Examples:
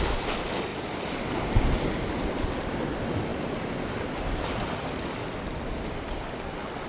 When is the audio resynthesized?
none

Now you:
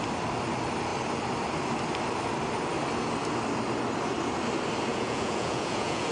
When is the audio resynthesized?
4.9-6.1 (vocoder, Vocos)

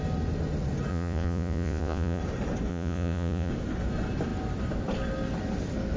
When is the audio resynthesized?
0.9-2.2 (vocoder, Vocos); 2.7-3.5

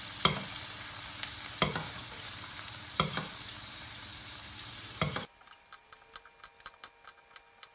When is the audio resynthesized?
1.7-5.4 (vocoder, BigVGAN v2)

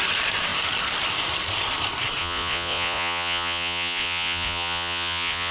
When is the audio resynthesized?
2.2-5.5 (vocoder, Vocos)